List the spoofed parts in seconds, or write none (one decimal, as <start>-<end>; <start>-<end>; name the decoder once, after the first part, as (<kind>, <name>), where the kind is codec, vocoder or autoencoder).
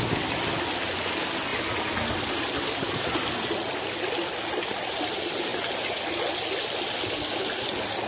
none